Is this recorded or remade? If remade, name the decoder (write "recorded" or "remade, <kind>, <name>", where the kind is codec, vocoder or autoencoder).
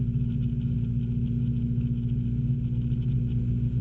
recorded